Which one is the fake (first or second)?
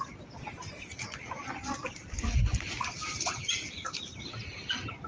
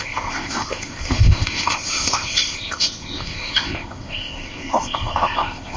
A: second